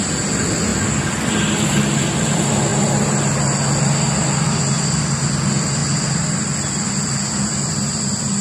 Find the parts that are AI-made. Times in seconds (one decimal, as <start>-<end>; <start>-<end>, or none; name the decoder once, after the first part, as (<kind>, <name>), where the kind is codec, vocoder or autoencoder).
none